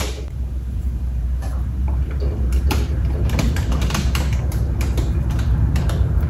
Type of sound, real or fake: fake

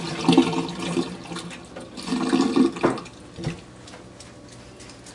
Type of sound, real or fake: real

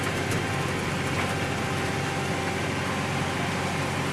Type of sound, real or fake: real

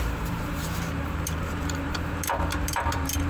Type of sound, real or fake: fake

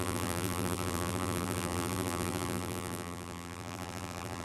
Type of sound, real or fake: fake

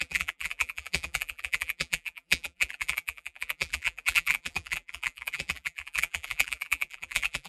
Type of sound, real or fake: fake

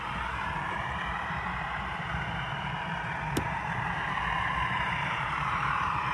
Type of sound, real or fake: fake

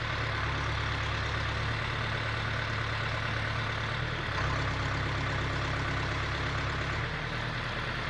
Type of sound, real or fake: real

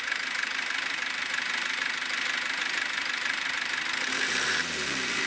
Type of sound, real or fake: fake